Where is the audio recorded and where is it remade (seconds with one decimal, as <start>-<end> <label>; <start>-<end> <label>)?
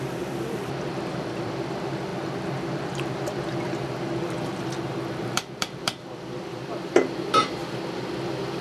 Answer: 0.0-7.6 remade; 7.6-8.2 recorded; 8.2-8.6 remade